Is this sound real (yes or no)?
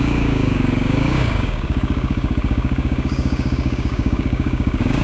no